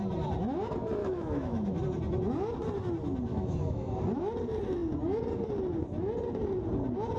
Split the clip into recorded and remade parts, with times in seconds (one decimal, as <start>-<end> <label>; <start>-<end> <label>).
0.0-1.0 recorded; 1.0-1.8 remade; 1.8-3.3 recorded; 3.3-4.0 remade; 4.0-7.2 recorded